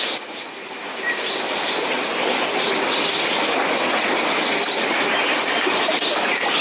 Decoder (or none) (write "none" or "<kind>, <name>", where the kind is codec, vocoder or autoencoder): none